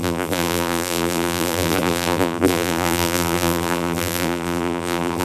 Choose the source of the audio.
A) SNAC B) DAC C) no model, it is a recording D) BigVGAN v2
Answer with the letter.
D